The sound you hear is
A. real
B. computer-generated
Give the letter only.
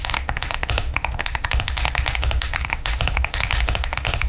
B